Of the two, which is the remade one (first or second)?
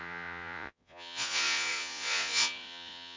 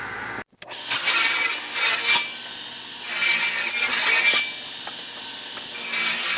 first